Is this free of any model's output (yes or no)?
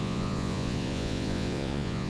no